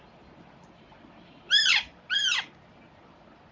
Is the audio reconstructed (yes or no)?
no